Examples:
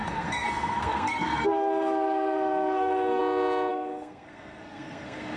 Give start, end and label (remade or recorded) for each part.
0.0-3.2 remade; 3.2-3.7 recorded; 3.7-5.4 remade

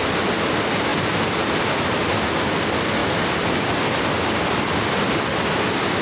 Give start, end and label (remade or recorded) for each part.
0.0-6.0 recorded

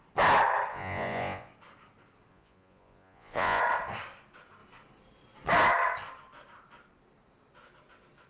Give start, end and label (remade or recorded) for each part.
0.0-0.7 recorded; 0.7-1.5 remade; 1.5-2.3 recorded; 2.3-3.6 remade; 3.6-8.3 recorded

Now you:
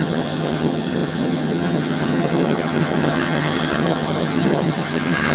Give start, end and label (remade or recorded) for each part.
0.0-5.3 remade

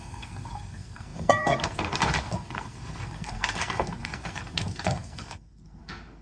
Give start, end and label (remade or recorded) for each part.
0.0-6.2 remade